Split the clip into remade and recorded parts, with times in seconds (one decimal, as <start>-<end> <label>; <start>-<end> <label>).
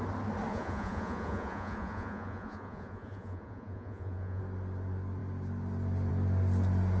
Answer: 0.0-0.5 recorded; 0.5-4.4 remade; 4.4-7.0 recorded